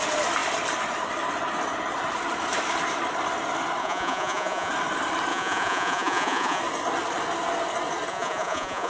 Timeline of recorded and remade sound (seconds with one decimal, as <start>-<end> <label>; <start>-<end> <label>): 0.0-3.8 recorded; 3.8-4.7 remade; 4.7-5.3 recorded; 5.3-6.6 remade; 6.6-8.1 recorded; 8.1-8.9 remade